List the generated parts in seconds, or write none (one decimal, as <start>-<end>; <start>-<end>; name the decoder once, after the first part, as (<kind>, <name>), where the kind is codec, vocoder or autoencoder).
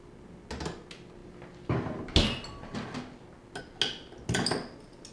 none